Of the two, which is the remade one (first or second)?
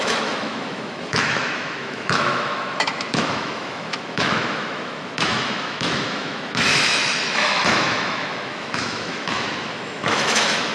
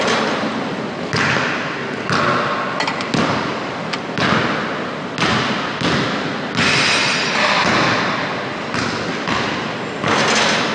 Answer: first